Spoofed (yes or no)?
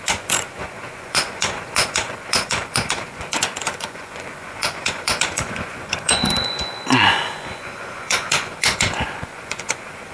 yes